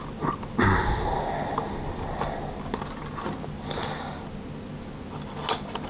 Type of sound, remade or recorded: recorded